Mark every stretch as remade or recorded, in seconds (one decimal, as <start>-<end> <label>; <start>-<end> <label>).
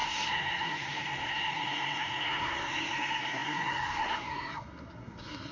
0.0-5.5 remade